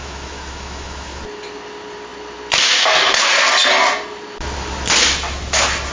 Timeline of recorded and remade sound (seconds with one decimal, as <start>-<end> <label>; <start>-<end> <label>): 0.0-1.2 remade; 1.2-5.9 recorded